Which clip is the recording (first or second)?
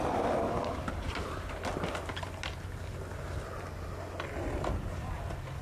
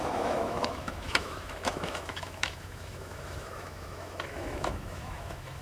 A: first